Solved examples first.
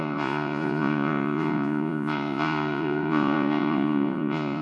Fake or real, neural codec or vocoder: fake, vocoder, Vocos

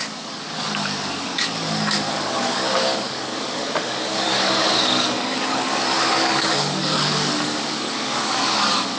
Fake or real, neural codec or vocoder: fake, codec, DAC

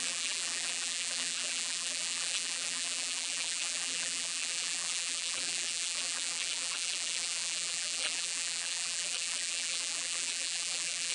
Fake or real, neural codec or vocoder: fake, vocoder, BigVGAN v2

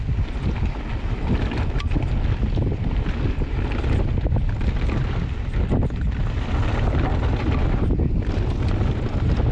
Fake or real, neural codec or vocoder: real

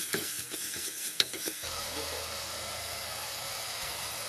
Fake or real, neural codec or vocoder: fake, codec, SNAC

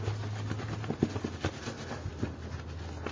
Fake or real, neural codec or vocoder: real